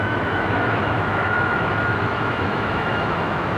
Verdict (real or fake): fake